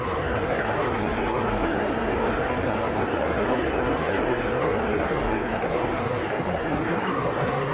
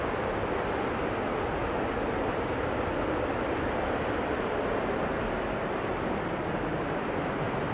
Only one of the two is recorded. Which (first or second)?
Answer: second